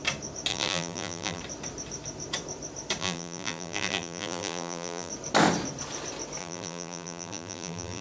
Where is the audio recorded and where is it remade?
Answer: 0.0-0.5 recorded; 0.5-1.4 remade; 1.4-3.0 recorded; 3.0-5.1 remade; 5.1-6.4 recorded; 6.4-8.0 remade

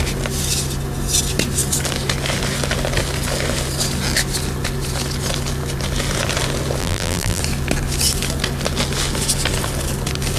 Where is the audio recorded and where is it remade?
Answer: 0.0-6.8 recorded; 6.8-7.4 remade; 7.4-10.4 recorded

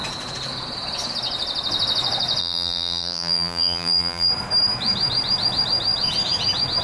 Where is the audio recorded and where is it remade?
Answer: 0.0-2.4 recorded; 2.4-4.3 remade; 4.3-6.8 recorded